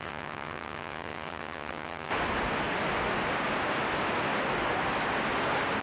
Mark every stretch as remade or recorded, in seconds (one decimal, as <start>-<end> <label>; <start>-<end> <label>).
0.0-2.1 remade; 2.1-5.8 recorded